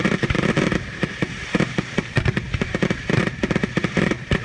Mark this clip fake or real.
fake